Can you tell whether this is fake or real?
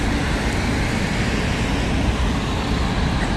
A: real